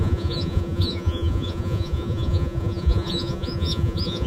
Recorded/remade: remade